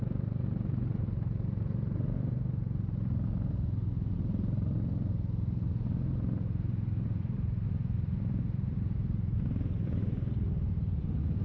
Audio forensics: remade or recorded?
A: remade